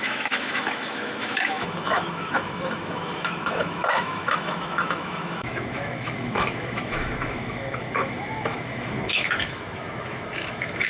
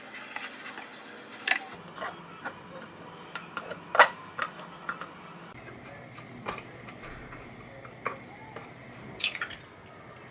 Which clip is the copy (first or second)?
first